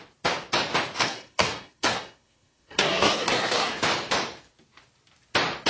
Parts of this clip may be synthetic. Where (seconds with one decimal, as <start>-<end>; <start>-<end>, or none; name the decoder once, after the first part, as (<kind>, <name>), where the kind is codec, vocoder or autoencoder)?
1.0-3.8 (codec, SNAC)